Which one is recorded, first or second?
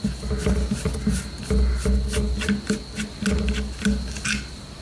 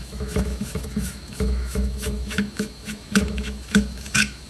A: first